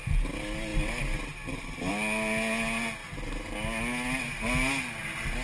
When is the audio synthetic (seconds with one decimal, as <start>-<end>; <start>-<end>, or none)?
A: none